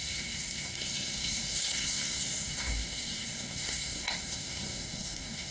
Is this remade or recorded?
remade